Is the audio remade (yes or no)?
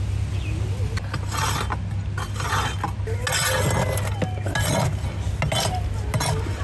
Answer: no